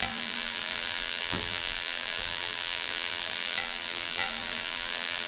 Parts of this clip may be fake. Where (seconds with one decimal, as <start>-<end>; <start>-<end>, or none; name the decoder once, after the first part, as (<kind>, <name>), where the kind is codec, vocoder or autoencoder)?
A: 0.0-5.3 (vocoder, BigVGAN v2)